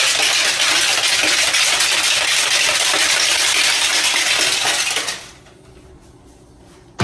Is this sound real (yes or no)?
yes